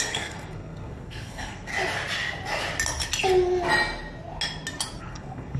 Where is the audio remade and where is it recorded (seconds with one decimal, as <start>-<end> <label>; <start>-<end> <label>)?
0.0-1.7 remade; 1.7-5.0 recorded; 5.0-5.6 remade